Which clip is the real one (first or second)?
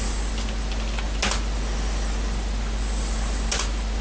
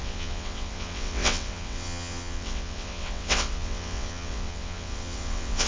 first